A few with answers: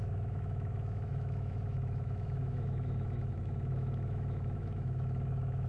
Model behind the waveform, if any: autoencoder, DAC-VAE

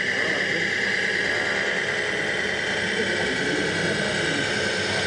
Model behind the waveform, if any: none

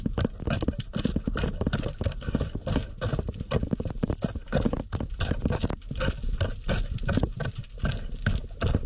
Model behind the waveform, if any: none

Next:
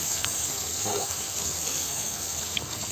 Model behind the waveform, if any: codec, SNAC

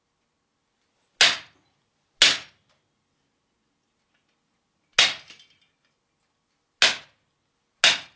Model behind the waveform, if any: none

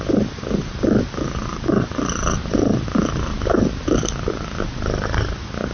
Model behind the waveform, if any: none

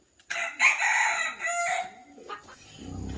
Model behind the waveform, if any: none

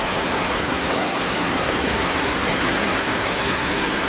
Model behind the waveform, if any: codec, SNAC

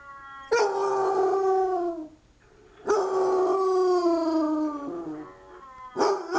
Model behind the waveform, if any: none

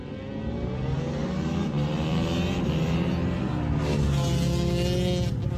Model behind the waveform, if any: none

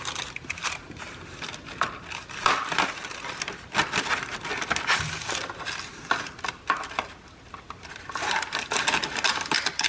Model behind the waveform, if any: none